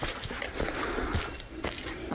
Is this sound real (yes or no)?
yes